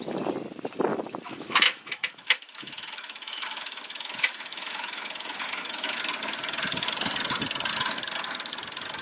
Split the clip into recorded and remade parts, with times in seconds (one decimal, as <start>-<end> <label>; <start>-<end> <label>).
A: 0.0-0.9 recorded; 0.9-6.0 remade; 6.0-9.0 recorded